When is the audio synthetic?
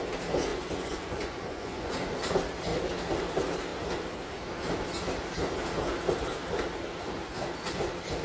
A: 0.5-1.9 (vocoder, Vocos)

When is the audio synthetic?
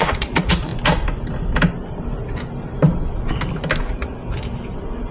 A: 0.0-0.7 (vocoder, Vocos); 3.8-4.2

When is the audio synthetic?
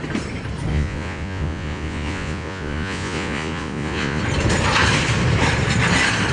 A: 0.7-4.2 (vocoder, Vocos)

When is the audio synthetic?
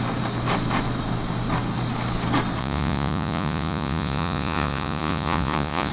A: 2.6-5.9 (vocoder, Vocos)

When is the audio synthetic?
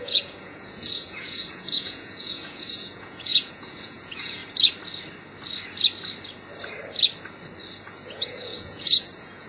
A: 0.0-4.4 (vocoder, Vocos); 8.1-9.5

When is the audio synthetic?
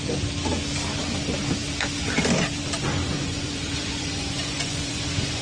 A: 3.0-5.4 (vocoder, Vocos)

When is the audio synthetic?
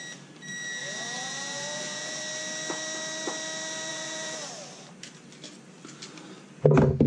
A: 0.8-2.2 (vocoder, Vocos); 3.9-4.5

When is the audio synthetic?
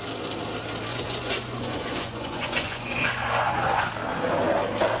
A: 0.9-3.9 (vocoder, Vocos)